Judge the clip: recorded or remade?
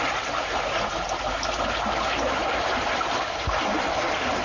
recorded